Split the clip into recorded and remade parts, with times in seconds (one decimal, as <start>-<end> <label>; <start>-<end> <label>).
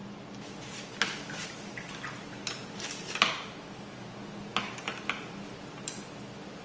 0.0-6.6 recorded